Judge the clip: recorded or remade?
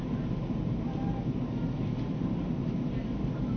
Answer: recorded